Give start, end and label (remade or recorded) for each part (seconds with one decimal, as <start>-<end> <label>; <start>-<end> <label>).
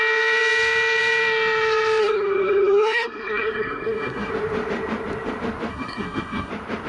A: 0.0-2.0 recorded; 2.0-4.3 remade; 4.3-5.7 recorded; 5.7-6.5 remade; 6.5-6.9 recorded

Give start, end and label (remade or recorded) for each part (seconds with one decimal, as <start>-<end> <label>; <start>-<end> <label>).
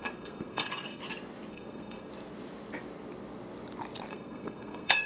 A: 0.0-1.0 remade; 1.0-1.5 recorded; 1.5-2.1 remade; 2.1-4.1 recorded; 4.1-5.1 remade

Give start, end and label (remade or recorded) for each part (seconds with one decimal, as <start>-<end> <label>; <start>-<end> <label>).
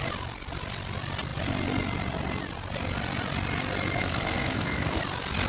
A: 0.0-4.0 recorded; 4.0-5.0 remade; 5.0-5.5 recorded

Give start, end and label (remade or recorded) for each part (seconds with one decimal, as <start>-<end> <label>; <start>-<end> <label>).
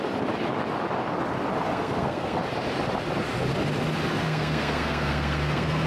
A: 0.0-1.7 recorded; 1.7-2.4 remade; 2.4-4.2 recorded; 4.2-5.9 remade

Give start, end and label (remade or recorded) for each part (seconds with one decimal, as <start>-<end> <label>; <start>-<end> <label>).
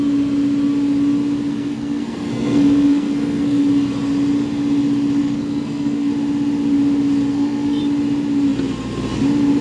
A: 0.0-1.5 recorded; 1.5-3.7 remade; 3.7-5.2 recorded; 5.2-6.1 remade; 6.1-7.3 recorded; 7.3-7.8 remade; 7.8-9.6 recorded